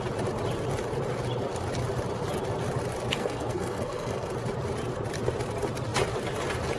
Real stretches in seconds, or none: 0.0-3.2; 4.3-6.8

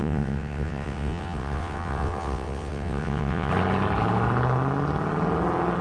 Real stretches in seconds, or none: 3.5-5.8

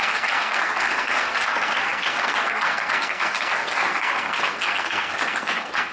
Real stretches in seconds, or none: none

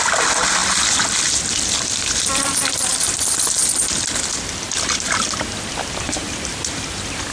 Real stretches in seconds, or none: 0.0-7.3

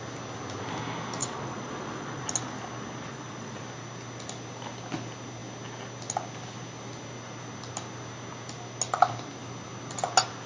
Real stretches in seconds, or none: 0.0-1.2; 2.2-3.1; 3.6-10.5